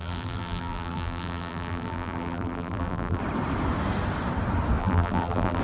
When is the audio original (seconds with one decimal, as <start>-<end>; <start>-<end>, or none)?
3.2-4.8